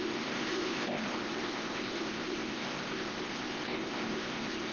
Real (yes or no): no